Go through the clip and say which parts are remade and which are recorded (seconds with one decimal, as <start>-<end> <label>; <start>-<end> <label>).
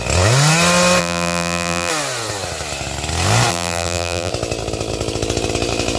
0.0-1.0 recorded; 1.0-1.9 remade; 1.9-3.5 recorded; 3.5-4.3 remade; 4.3-6.0 recorded